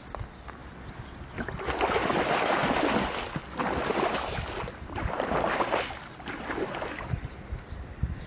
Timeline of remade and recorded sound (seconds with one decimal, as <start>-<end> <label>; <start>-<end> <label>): 0.0-8.3 recorded